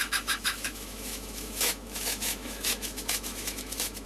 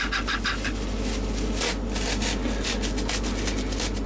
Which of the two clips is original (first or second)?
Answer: second